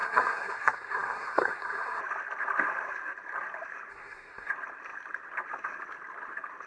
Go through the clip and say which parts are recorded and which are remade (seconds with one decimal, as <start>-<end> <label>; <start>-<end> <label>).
0.0-2.0 remade; 2.0-3.9 recorded; 3.9-4.5 remade; 4.5-6.7 recorded

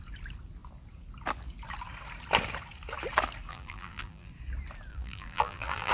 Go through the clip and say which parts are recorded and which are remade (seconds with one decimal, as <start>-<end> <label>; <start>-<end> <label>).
0.0-3.5 recorded; 3.5-4.3 remade; 4.3-4.9 recorded; 4.9-5.9 remade

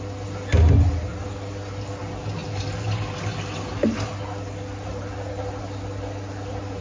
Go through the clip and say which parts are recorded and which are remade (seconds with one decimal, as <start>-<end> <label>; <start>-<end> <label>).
0.0-6.8 recorded

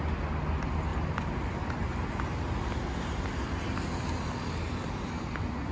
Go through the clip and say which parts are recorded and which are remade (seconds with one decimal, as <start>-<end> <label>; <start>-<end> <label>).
0.0-5.7 recorded

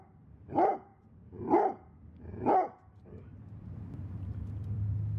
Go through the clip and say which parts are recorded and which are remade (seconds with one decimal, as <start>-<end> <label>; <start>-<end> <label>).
0.0-5.2 remade